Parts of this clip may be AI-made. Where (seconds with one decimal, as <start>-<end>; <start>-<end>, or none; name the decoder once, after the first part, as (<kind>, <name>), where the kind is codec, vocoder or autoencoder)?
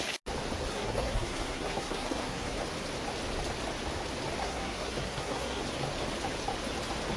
0.7-2.6 (codec, SNAC); 4.4-5.6